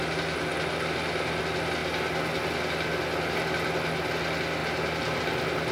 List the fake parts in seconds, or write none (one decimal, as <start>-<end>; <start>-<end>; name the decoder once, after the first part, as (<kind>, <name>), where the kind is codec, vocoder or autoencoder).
none